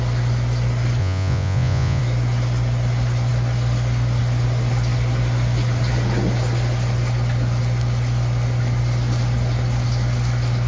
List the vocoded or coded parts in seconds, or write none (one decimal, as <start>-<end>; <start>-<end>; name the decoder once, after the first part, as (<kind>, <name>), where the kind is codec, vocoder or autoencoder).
1.0-2.0 (vocoder, Vocos)